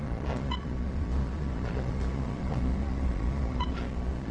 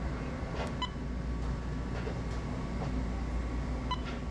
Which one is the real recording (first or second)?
second